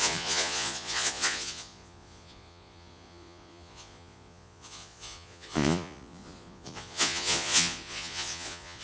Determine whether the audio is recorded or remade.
remade